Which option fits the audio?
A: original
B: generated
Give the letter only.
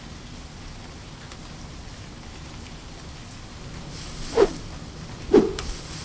A